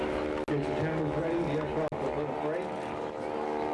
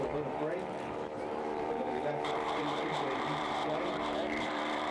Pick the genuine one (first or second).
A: first